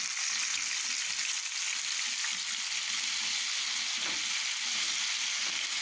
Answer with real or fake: real